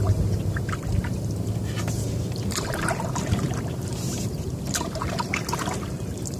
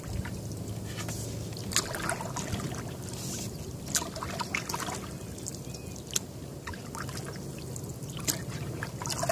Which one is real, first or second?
second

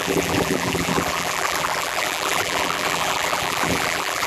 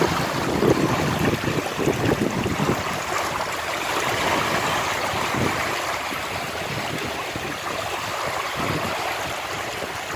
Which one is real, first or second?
second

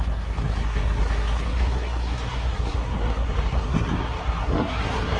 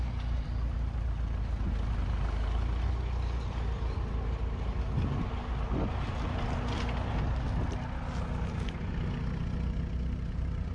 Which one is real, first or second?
second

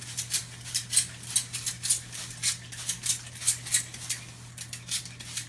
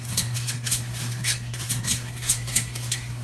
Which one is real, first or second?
first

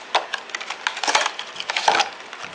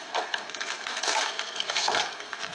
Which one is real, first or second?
first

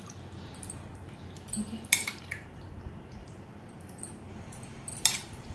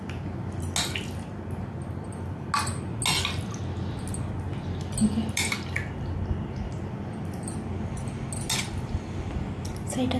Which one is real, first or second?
second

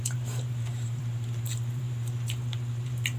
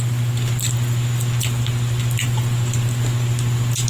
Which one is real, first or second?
second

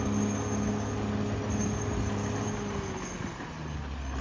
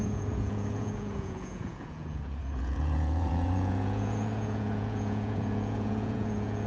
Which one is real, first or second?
first